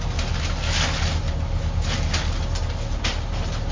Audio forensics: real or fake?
real